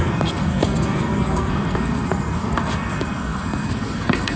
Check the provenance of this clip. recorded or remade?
remade